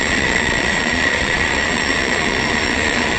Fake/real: fake